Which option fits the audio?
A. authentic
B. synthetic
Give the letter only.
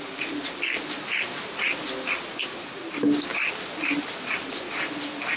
A